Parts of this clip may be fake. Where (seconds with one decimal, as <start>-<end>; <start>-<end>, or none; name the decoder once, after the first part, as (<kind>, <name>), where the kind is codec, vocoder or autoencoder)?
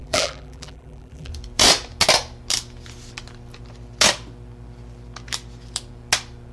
0.0-1.3 (vocoder, BigVGAN v2)